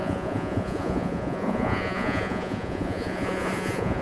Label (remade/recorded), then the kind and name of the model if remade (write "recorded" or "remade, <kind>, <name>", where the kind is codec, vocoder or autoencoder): remade, vocoder, Vocos